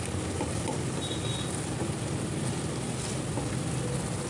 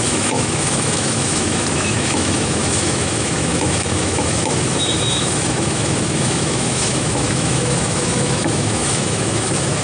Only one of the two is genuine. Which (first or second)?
first